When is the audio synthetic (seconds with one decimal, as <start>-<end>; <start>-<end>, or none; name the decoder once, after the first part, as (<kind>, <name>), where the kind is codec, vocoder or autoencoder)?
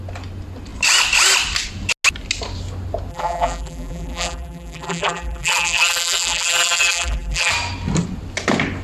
3.1-7.5 (vocoder, BigVGAN v2)